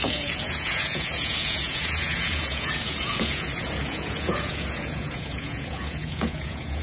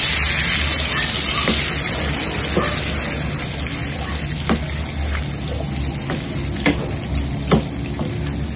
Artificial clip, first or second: first